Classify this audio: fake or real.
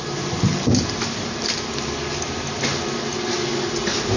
real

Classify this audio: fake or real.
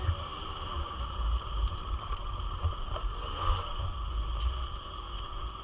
fake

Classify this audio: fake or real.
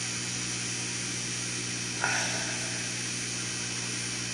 real